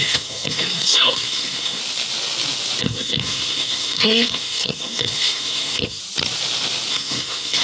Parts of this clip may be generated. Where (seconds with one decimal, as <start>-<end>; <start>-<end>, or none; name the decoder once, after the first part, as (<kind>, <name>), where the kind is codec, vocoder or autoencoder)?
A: 0.0-1.8 (codec, SNAC); 2.8-6.0; 6.9-7.6